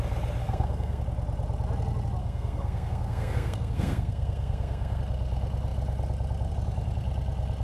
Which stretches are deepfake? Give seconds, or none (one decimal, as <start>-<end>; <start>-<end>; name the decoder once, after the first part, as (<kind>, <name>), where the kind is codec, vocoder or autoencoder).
0.4-1.0 (codec, SNAC); 2.2-5.0